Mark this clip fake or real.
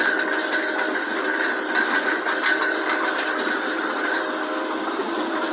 real